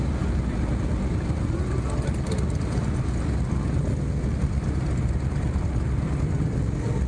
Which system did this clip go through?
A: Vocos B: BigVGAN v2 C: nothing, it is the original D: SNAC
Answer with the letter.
C